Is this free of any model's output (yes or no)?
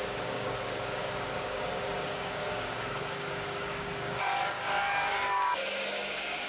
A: no